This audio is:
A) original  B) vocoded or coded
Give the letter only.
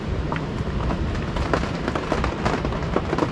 A